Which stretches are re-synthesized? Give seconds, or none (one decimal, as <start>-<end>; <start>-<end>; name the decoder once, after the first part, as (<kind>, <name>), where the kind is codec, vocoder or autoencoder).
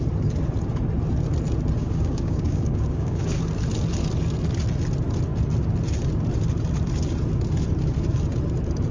1.8-3.4 (codec, DAC)